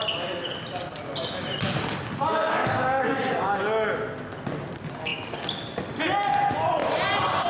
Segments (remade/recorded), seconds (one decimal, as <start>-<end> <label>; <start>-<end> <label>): 0.0-2.3 recorded; 2.3-3.5 remade; 3.5-7.5 recorded